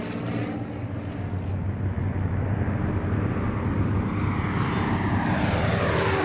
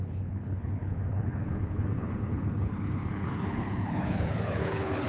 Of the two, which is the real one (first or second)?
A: first